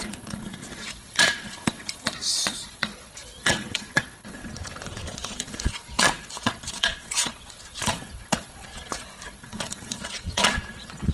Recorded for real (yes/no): no